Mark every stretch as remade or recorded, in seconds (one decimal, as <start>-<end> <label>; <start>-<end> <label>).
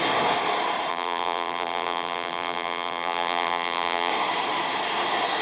0.0-0.9 recorded; 0.9-4.1 remade; 4.1-5.4 recorded